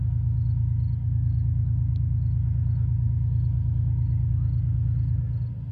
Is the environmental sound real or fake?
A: real